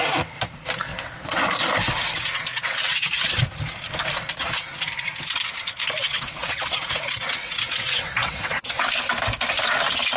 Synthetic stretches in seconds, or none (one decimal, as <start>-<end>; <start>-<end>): 0.9-1.4; 2.5-3.4; 6.0-8.9